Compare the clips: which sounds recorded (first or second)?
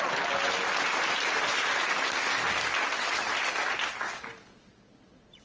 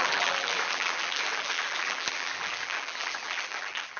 first